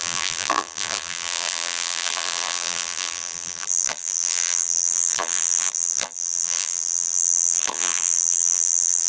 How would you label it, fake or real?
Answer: fake